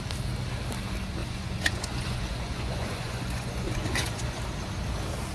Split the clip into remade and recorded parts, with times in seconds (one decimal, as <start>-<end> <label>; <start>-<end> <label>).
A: 0.0-1.2 recorded; 1.2-4.4 remade; 4.4-5.3 recorded

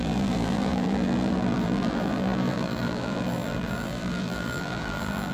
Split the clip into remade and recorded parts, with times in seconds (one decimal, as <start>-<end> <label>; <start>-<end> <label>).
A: 0.0-5.3 remade

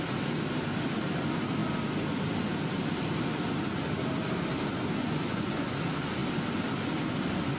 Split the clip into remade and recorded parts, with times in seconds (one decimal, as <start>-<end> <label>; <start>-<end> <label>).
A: 0.0-5.0 recorded; 5.0-5.7 remade; 5.7-7.6 recorded